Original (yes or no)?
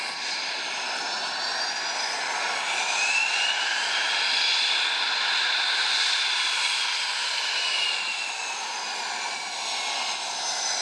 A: yes